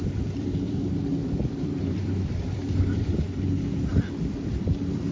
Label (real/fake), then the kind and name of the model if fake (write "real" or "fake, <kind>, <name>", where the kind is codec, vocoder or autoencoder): fake, vocoder, BigVGAN v2